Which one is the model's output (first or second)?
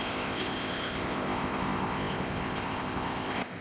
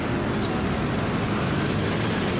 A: first